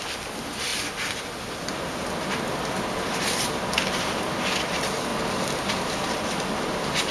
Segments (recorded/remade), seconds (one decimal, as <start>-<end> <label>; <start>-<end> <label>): 0.0-7.1 recorded